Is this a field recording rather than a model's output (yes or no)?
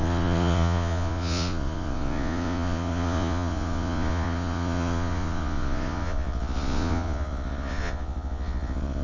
no